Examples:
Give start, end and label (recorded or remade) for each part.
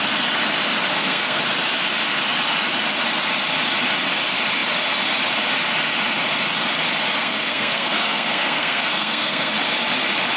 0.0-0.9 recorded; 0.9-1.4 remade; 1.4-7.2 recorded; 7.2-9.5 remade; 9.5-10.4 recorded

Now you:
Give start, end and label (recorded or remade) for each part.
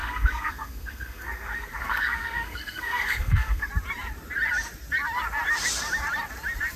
0.0-3.7 remade; 3.7-6.8 recorded